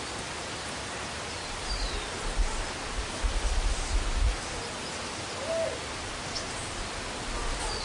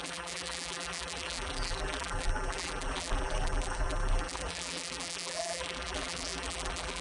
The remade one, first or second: second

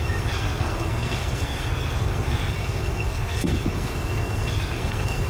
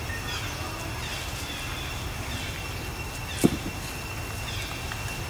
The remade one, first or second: first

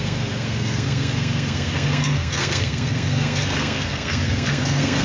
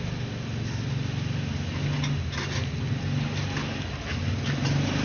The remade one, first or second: first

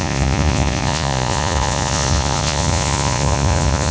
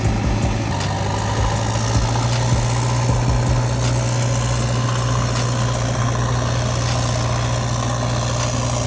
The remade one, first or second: first